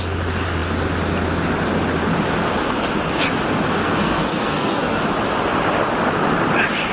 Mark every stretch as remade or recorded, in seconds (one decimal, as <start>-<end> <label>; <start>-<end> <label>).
0.0-3.8 recorded; 3.8-5.0 remade; 5.0-6.9 recorded